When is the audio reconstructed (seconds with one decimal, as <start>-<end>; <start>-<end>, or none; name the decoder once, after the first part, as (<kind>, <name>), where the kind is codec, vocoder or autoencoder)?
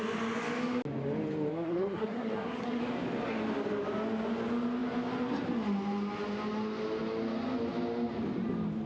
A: 1.5-2.8 (codec, SNAC)